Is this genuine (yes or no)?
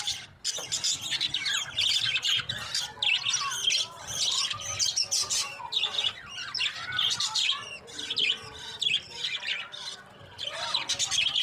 yes